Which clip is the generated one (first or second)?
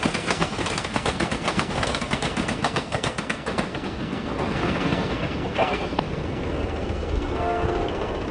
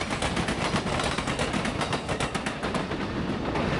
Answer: first